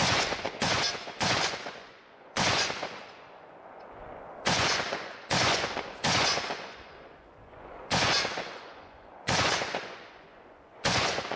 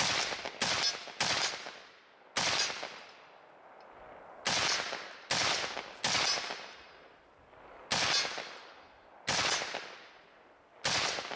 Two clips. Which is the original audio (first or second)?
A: second